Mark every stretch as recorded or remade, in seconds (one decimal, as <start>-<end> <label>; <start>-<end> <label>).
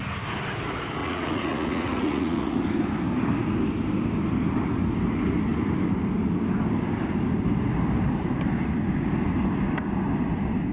0.0-1.0 recorded; 1.0-2.6 remade; 2.6-10.7 recorded